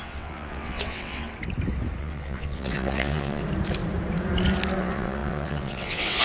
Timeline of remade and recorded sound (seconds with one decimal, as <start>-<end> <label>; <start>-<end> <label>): 0.0-1.3 remade; 1.3-2.0 recorded; 2.0-3.4 remade; 3.4-4.8 recorded; 4.8-6.2 remade